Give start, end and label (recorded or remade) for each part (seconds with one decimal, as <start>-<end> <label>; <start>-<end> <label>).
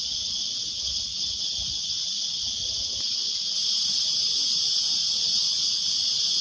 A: 0.0-0.7 recorded; 0.7-1.5 remade; 1.5-5.2 recorded; 5.2-5.9 remade; 5.9-6.4 recorded